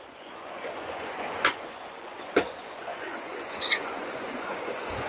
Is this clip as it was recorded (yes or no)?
no